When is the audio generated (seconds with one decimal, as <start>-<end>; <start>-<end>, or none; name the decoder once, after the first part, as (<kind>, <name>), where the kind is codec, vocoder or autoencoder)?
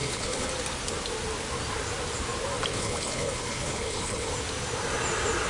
0.0-0.5 (codec, HILCodec); 2.7-4.3